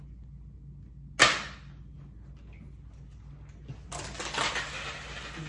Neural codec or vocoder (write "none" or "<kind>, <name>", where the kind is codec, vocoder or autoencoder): none